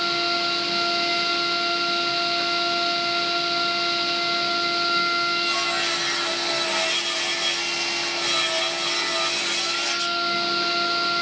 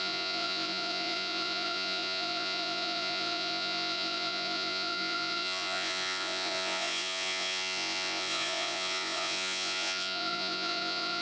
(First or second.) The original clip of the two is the first